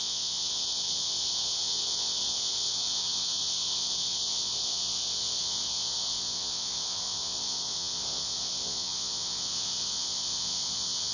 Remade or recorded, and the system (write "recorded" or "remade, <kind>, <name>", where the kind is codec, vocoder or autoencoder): remade, vocoder, Vocos